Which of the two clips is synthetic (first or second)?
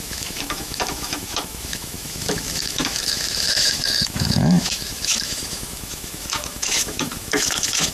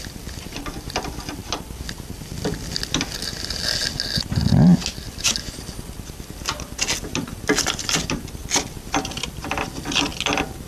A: first